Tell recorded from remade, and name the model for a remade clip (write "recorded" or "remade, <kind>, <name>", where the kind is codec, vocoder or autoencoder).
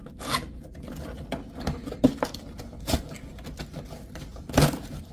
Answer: recorded